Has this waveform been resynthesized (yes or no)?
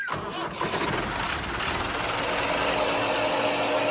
no